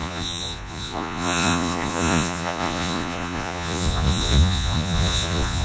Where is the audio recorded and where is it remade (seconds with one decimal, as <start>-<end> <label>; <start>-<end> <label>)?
0.0-5.6 remade